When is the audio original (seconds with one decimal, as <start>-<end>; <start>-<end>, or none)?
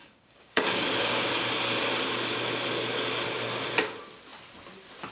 1.3-5.1